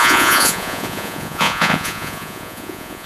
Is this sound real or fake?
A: fake